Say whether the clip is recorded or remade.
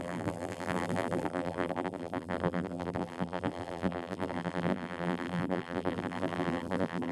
remade